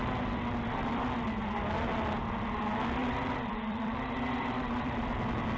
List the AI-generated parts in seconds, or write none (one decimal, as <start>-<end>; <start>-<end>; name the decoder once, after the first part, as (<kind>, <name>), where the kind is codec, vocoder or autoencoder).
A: 3.0-4.9 (vocoder, BigVGAN v2)